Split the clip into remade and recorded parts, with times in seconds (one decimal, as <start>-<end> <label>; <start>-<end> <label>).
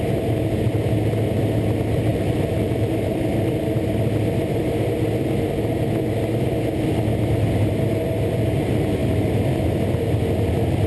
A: 0.0-2.1 recorded; 2.1-3.4 remade; 3.4-10.9 recorded